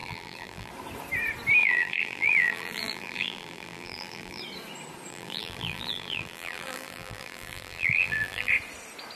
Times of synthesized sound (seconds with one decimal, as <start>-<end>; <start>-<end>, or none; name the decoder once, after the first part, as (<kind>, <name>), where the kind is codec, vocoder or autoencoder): 0.0-0.7 (vocoder, BigVGAN v2); 1.6-4.4; 5.1-8.5